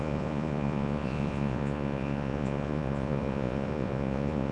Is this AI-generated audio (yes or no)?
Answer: yes